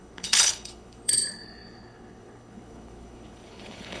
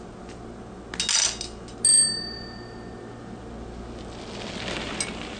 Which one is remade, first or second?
first